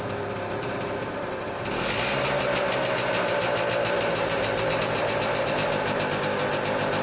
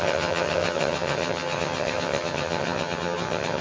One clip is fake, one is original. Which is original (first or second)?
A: first